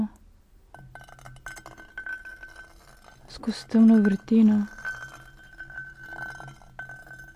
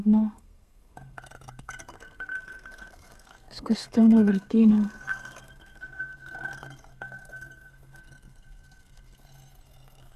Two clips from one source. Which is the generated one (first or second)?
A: second